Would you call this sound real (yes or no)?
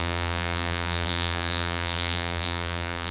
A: no